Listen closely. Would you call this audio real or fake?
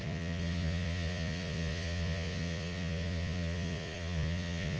fake